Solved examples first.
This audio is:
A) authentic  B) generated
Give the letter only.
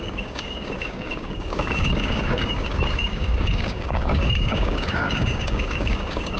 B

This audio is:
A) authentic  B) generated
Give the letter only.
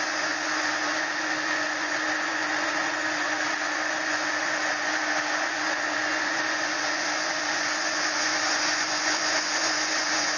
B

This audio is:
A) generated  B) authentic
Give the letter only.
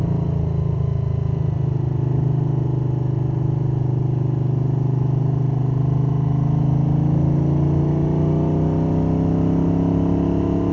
B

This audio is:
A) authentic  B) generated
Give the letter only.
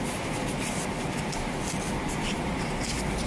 A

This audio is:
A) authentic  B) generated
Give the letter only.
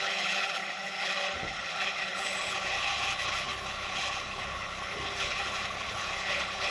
B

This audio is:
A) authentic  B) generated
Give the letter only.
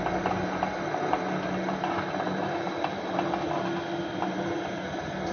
A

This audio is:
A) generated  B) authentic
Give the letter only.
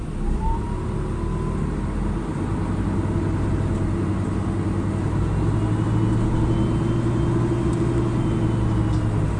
B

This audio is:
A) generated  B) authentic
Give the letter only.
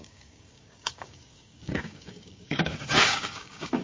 A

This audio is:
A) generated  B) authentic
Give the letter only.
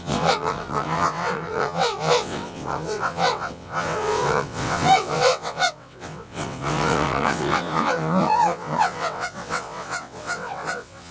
A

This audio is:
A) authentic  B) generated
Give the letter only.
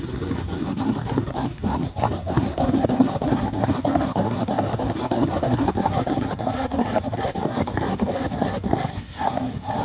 B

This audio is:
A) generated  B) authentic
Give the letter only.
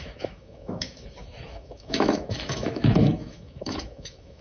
A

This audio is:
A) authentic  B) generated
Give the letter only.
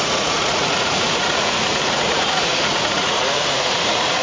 B